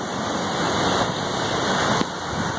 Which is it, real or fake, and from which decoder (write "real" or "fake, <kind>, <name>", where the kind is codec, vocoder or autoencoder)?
real